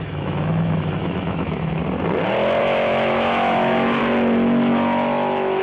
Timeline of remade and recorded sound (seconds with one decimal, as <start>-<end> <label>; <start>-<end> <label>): 0.0-1.8 remade; 1.8-2.6 recorded; 2.6-4.0 remade; 4.0-5.6 recorded